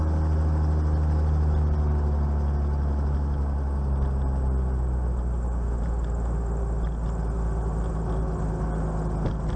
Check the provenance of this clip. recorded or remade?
recorded